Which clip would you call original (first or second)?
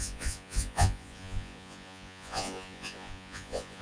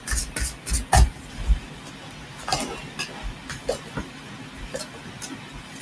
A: second